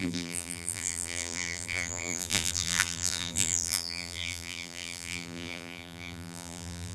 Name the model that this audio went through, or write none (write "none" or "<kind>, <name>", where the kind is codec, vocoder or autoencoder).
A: vocoder, BigVGAN v2